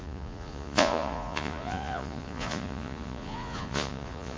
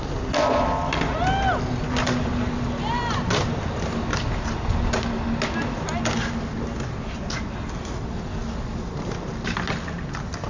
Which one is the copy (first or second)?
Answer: first